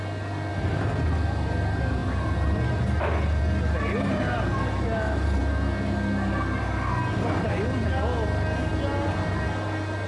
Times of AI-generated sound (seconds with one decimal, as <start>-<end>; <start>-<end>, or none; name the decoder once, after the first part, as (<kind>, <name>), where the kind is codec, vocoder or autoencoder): 0.5-2.0 (vocoder, BigVGAN v2); 3.4-5.4; 6.6-8.7

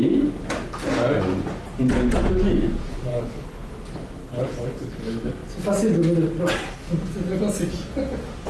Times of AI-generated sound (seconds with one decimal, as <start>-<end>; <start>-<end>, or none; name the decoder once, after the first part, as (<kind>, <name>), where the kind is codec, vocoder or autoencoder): 3.1-3.7 (codec, HILCodec); 4.2-5.0

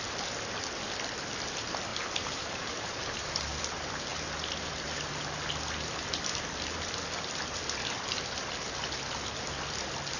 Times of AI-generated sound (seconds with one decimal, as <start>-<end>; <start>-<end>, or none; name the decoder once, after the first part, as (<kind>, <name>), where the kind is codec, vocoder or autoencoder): 1.9-3.6 (vocoder, BigVGAN v2)

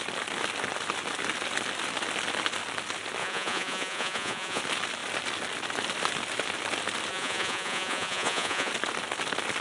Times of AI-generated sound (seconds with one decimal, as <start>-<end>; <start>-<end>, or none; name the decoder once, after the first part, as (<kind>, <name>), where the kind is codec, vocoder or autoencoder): 3.2-4.6 (vocoder, Vocos); 7.1-8.7

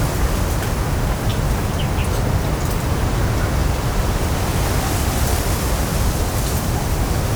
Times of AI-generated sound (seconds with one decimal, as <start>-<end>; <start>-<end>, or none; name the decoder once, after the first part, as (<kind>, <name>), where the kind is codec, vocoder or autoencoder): none

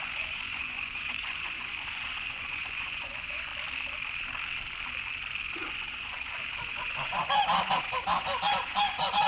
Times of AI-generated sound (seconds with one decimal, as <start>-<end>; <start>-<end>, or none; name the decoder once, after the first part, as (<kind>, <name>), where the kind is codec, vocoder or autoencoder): 0.0-3.5 (vocoder, Vocos); 5.4-9.3